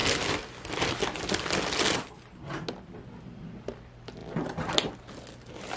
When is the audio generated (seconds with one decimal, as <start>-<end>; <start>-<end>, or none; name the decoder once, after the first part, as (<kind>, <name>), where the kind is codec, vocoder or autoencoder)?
4.2-4.9 (vocoder, BigVGAN v2)